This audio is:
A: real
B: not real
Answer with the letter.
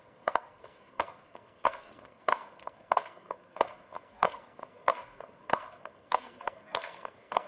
B